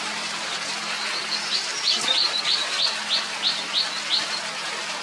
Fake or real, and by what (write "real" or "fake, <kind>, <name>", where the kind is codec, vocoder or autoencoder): real